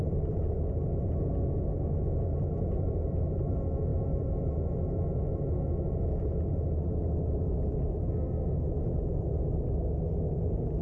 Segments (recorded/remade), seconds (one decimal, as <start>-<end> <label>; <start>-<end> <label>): 0.0-2.5 recorded; 2.5-3.5 remade; 3.5-3.9 recorded; 3.9-4.8 remade; 4.8-10.8 recorded